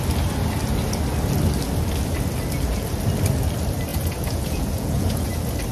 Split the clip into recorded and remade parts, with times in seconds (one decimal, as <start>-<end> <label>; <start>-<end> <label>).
0.0-3.9 recorded; 3.9-5.3 remade; 5.3-5.7 recorded